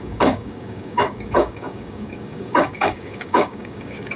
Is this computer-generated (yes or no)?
yes